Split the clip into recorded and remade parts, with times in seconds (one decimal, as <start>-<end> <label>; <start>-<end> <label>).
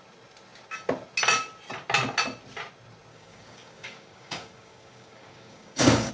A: 0.0-3.1 recorded; 3.1-6.1 remade